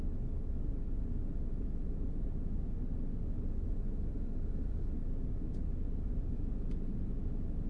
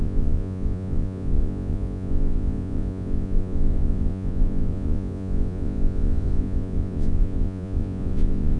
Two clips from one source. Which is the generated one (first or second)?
second